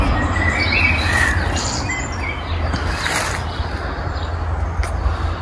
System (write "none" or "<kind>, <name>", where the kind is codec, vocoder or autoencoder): none